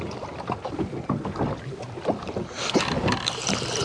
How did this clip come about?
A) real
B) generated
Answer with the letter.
A